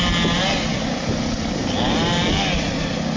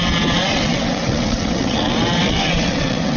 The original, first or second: first